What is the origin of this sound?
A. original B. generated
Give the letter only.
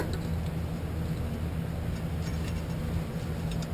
A